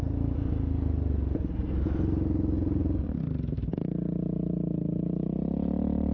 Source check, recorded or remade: recorded